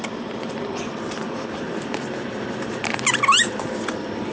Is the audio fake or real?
fake